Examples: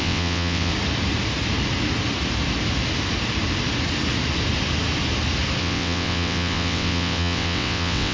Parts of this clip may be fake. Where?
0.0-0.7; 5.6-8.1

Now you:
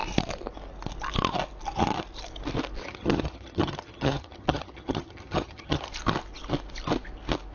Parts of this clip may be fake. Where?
2.8-5.9

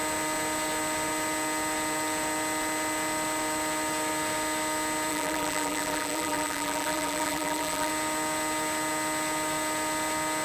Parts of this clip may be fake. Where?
5.1-7.9

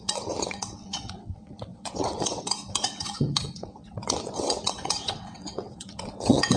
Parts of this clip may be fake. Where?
0.0-6.6

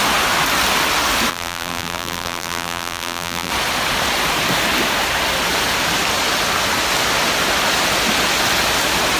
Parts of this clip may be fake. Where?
1.3-3.5

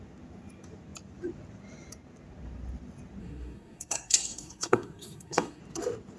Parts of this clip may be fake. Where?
3.2-5.6